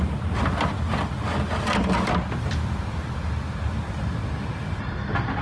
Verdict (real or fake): real